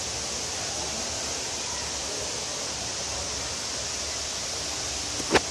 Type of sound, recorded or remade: recorded